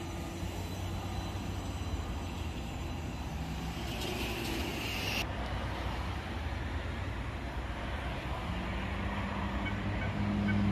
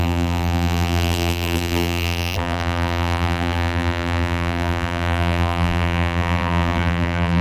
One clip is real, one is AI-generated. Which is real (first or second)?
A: first